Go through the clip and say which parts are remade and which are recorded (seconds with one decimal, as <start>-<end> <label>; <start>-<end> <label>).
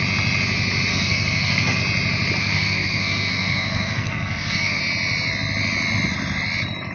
0.0-0.9 recorded; 0.9-1.8 remade; 1.8-2.4 recorded; 2.4-4.8 remade; 4.8-6.9 recorded